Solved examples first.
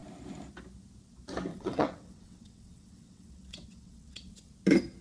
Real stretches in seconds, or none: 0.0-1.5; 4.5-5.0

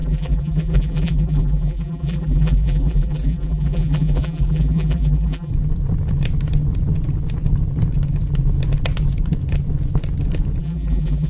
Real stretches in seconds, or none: 5.5-10.6